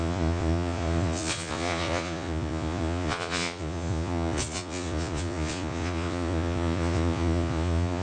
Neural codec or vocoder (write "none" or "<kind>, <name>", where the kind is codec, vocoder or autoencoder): vocoder, Vocos